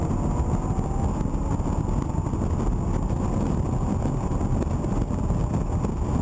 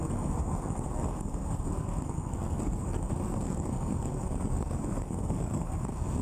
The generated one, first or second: second